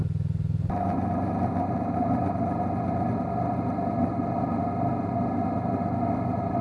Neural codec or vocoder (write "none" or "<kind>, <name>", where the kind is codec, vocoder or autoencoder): none